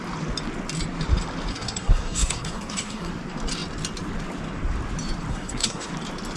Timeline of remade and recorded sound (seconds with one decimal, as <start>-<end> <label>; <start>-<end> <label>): 0.0-1.5 recorded; 1.5-3.1 remade; 3.1-5.3 recorded; 5.3-5.9 remade; 5.9-6.4 recorded